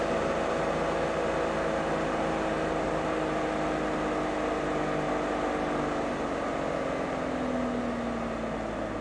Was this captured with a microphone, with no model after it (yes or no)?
yes